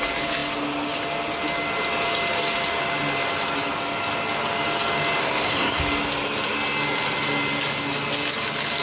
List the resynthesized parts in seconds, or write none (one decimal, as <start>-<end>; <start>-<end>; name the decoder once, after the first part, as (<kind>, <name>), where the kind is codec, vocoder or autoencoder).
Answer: 5.2-5.8 (codec, SNAC)